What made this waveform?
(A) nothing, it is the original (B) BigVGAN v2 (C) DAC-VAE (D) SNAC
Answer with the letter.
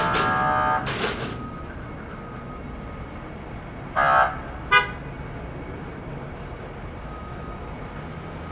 A